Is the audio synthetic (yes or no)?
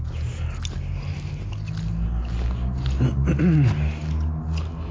no